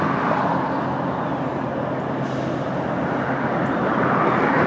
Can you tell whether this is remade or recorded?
recorded